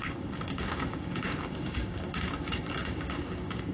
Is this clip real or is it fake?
fake